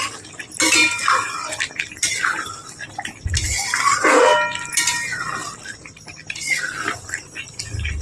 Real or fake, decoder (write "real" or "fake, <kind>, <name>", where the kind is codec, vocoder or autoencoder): real